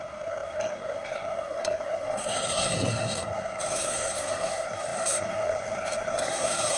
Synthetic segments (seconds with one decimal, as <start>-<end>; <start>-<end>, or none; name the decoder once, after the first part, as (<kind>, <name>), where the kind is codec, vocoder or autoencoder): 0.0-6.8 (codec, SNAC)